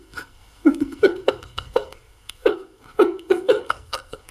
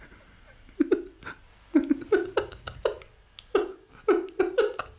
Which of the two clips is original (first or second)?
second